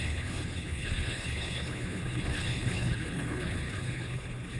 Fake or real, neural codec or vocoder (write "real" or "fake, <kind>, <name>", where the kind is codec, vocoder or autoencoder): fake, codec, HILCodec